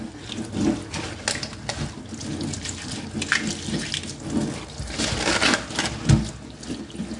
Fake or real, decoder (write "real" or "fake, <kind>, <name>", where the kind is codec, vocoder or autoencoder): real